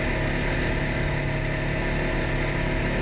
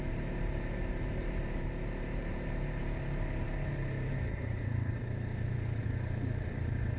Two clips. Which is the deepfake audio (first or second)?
second